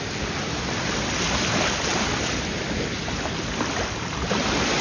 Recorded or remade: recorded